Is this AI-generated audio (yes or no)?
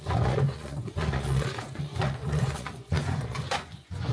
yes